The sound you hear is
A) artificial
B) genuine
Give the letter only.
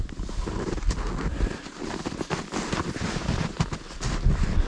B